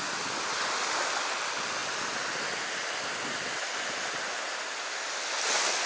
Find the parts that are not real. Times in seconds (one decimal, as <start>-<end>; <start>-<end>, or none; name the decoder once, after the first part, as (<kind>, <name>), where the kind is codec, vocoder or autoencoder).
none